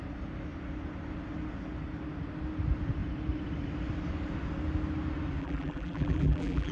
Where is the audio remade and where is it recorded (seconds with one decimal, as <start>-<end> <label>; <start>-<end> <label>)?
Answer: 0.0-5.4 recorded; 5.4-6.7 remade